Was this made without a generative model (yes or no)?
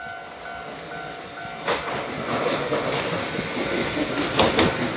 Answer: yes